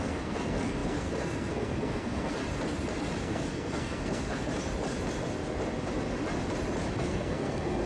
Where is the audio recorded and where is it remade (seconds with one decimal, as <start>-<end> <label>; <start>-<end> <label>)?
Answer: 0.0-2.4 remade; 2.4-3.2 recorded; 3.2-4.5 remade; 4.5-7.0 recorded; 7.0-7.9 remade